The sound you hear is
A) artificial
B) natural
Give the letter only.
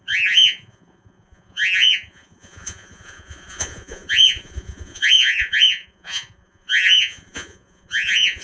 A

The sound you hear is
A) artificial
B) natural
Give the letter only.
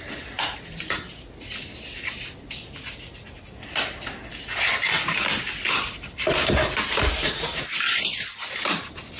B